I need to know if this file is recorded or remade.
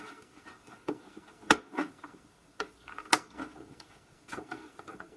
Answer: remade